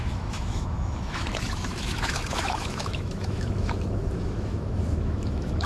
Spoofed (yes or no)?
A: yes